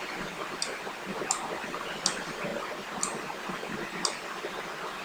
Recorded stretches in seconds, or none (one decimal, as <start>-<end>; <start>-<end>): 0.0-5.0